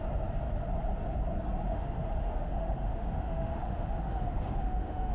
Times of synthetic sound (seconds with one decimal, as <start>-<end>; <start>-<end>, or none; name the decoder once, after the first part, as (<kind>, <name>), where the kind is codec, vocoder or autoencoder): 1.7-5.1 (autoencoder, DAC-VAE)